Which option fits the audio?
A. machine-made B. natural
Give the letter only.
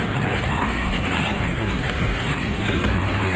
A